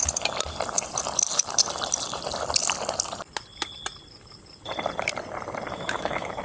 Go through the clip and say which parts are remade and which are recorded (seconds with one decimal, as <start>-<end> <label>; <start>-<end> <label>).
0.0-5.7 recorded; 5.7-6.4 remade